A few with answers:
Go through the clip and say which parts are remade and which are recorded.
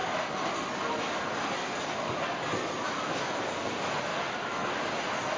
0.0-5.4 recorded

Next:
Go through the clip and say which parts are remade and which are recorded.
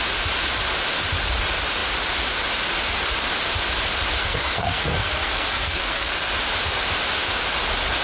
0.0-4.2 recorded; 4.2-6.3 remade; 6.3-8.0 recorded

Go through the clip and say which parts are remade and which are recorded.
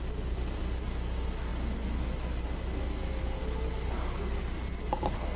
0.0-5.4 recorded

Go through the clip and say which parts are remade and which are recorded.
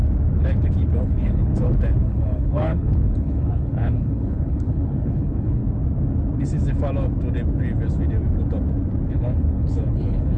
0.0-1.0 recorded; 1.0-1.5 remade; 1.5-2.0 recorded; 2.0-5.6 remade; 5.6-9.1 recorded; 9.1-10.4 remade